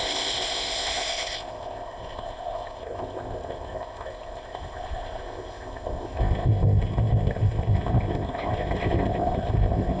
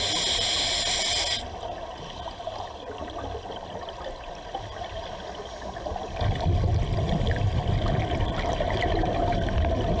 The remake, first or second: first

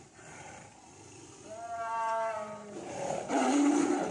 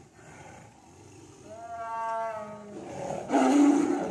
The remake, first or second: first